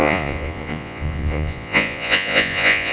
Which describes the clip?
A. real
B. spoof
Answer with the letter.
B